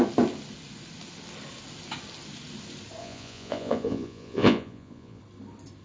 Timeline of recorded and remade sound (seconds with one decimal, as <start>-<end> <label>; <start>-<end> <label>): 0.0-3.0 recorded; 3.0-5.2 remade; 5.2-5.8 recorded